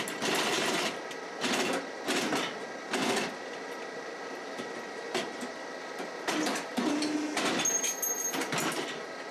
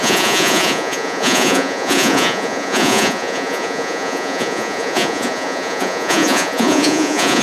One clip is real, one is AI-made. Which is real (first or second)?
first